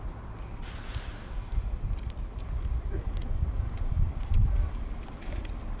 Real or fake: real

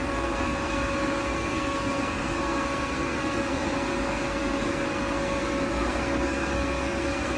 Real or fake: fake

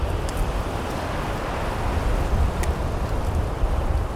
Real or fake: real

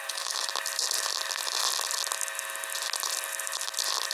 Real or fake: real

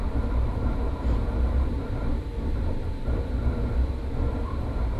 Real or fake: fake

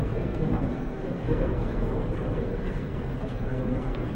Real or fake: fake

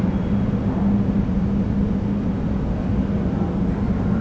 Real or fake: real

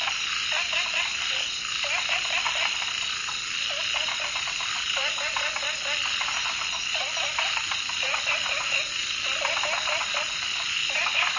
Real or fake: real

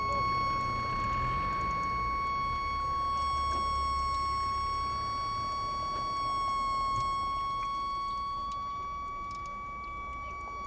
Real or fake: real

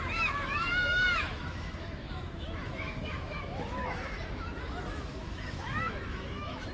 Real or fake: fake